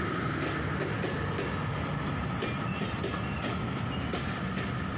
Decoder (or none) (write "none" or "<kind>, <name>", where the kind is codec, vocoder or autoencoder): none